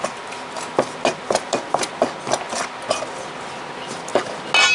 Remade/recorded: recorded